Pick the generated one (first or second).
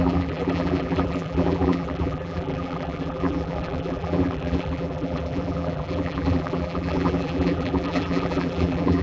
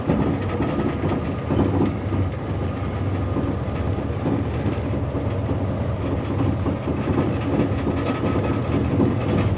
first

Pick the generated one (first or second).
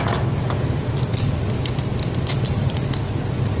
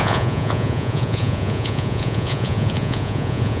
second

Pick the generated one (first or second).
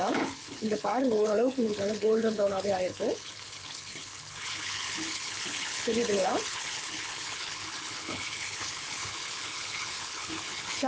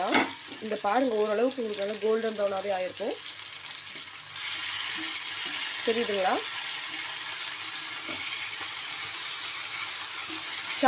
first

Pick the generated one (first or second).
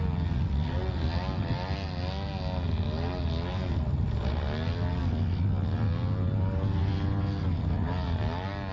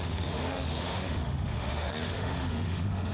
second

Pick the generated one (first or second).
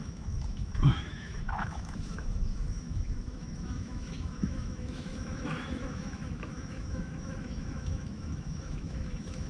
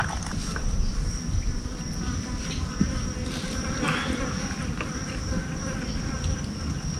first